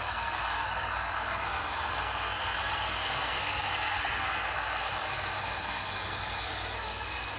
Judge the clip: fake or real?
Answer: fake